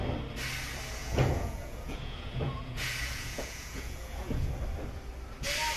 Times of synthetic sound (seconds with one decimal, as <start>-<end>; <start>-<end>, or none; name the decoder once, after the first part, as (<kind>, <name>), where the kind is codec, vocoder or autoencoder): 1.0-4.5 (vocoder, Vocos)